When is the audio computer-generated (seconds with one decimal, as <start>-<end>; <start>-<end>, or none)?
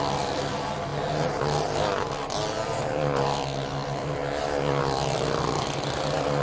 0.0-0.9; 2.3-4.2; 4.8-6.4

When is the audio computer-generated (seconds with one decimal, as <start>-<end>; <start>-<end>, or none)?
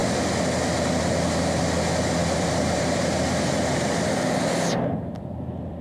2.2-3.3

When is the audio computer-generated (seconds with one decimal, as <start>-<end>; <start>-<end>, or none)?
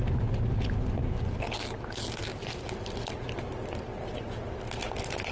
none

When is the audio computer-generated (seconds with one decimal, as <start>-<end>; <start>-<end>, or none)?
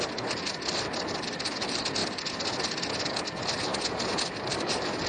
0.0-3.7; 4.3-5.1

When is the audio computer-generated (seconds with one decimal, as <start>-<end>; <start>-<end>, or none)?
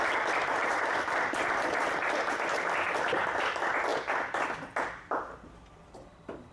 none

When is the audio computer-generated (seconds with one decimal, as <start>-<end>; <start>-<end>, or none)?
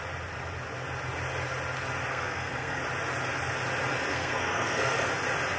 2.1-2.8; 4.1-5.1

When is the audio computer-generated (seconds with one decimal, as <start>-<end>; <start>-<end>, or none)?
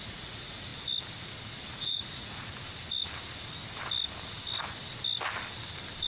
0.0-0.7; 1.7-2.5